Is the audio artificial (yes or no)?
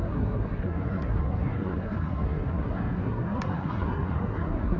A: yes